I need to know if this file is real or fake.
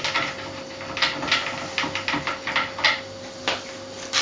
real